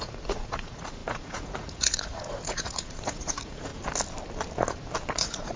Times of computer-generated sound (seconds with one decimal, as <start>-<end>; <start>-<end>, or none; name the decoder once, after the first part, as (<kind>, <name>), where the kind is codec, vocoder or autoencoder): 0.0-3.7 (vocoder, Vocos); 5.1-5.6